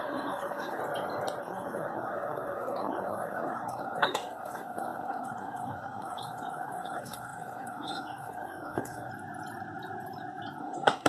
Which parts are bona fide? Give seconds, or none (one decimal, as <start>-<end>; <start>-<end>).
0.8-1.4; 9.1-10.6